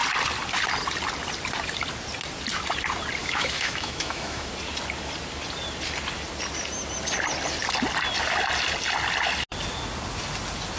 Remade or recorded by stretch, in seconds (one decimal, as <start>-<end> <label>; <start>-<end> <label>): 0.0-3.2 recorded; 3.2-4.5 remade; 4.5-10.8 recorded